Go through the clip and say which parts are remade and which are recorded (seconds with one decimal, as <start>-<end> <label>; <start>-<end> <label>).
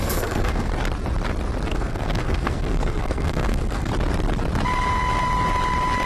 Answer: 0.0-0.7 remade; 0.7-1.7 recorded; 1.7-3.9 remade; 3.9-6.1 recorded